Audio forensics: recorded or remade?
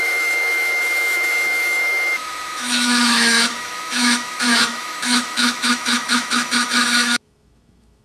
remade